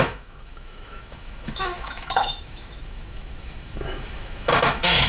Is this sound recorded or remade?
remade